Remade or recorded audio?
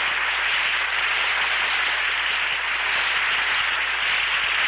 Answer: recorded